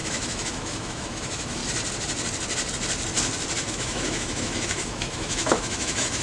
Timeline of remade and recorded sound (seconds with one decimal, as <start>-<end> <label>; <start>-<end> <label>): 0.0-1.6 remade; 1.6-3.7 recorded; 3.7-6.2 remade